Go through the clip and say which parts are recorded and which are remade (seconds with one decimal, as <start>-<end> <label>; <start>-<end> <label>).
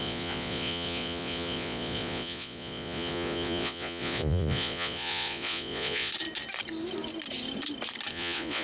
0.0-6.1 remade; 6.1-8.1 recorded; 8.1-8.6 remade